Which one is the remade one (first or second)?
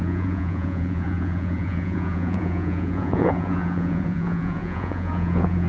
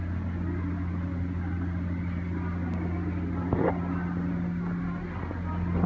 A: first